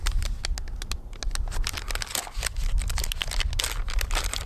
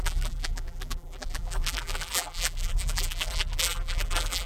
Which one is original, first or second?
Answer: first